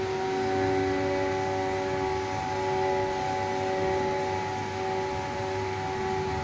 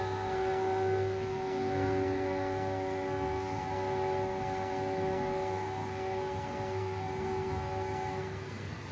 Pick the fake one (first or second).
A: second